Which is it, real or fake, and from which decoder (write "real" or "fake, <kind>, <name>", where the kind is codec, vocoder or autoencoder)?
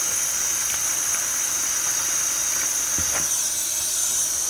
real